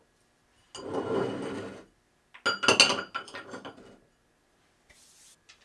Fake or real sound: real